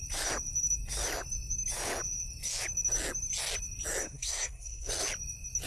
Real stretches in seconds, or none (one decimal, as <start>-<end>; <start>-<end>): 0.0-4.0; 4.9-5.7